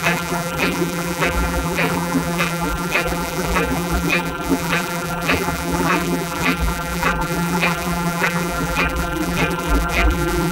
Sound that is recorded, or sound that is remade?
remade